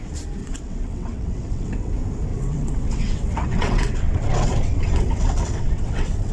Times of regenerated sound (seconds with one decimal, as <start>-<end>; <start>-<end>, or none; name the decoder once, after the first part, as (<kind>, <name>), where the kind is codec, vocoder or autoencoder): 0.4-1.9 (vocoder, WaveNeXt); 2.3-6.3

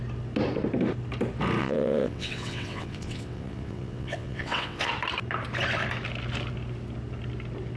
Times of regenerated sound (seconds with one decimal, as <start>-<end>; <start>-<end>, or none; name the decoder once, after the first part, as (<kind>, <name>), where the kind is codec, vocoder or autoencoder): 1.6-4.9 (vocoder, WaveNeXt)

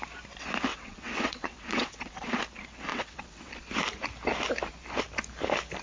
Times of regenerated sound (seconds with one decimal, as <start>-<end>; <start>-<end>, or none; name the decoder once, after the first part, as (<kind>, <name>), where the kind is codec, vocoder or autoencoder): 0.7-2.2 (vocoder, WaveNeXt); 2.9-3.5